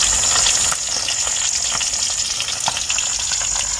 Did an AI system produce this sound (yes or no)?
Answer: no